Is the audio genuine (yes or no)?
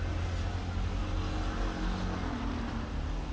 yes